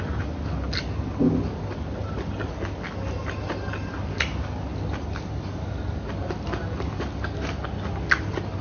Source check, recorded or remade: remade